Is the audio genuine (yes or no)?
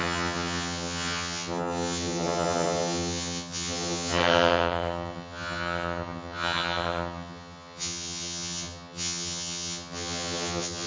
no